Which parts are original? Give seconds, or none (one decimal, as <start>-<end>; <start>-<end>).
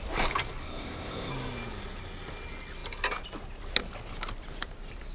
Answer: 0.0-0.6; 1.3-5.1